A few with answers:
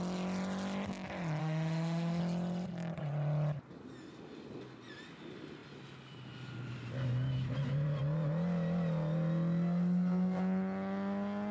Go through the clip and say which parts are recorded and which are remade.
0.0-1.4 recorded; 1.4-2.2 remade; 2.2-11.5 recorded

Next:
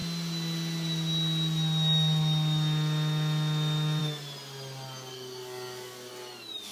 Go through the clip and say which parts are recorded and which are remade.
0.0-5.1 recorded; 5.1-6.1 remade; 6.1-6.7 recorded

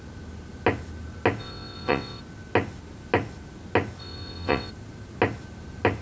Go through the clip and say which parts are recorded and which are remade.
0.0-1.4 recorded; 1.4-2.2 remade; 2.2-4.0 recorded; 4.0-4.7 remade; 4.7-6.0 recorded